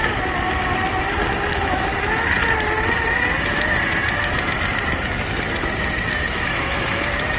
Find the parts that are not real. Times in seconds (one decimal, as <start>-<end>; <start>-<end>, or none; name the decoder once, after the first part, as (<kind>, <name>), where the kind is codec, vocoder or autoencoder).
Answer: 1.5-1.9 (autoencoder, DAC-VAE); 6.3-7.4